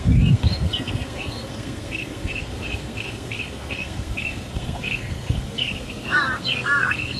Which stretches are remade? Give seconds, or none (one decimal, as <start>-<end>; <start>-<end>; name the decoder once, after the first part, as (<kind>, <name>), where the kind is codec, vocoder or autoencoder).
0.0-7.2 (codec, SNAC)